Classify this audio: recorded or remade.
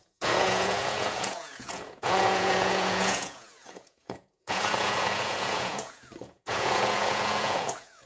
remade